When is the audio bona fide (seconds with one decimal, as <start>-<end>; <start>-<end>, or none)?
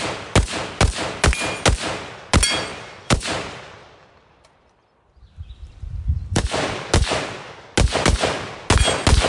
0.0-2.7; 6.6-9.3